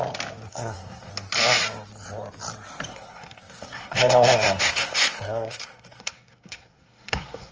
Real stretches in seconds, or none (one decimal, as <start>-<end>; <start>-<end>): 0.0-0.5; 1.1-2.9

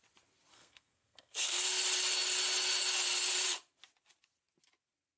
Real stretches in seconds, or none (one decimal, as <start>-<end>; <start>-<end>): 0.0-0.5; 1.8-5.2

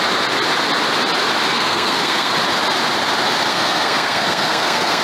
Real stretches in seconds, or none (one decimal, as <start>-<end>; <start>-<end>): 0.0-1.5; 2.3-3.5